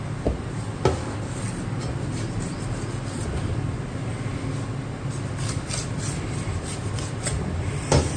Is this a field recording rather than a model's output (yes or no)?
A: yes